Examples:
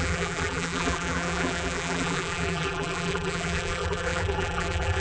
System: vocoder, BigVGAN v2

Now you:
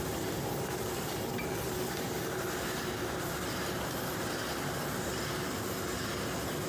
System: none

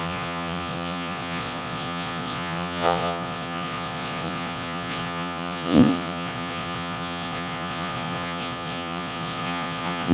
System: vocoder, Vocos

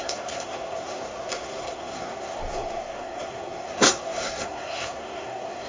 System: codec, SNAC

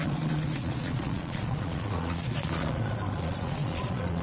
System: vocoder, Vocos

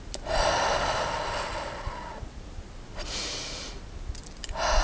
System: none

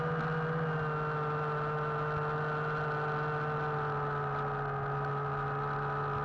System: none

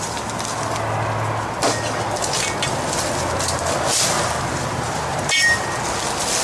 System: none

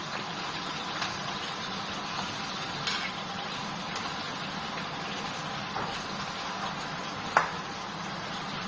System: none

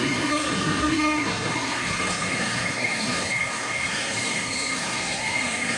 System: codec, SNAC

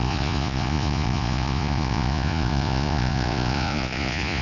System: vocoder, Vocos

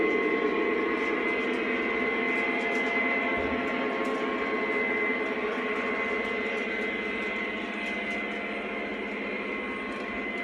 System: none